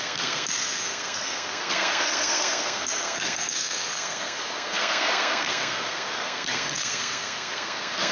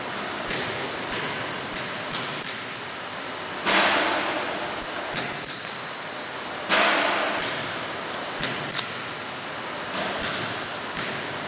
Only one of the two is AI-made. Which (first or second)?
first